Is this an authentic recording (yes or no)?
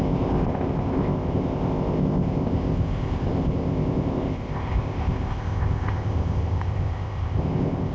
no